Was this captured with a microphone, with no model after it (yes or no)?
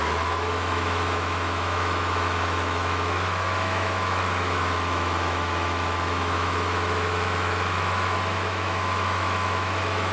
no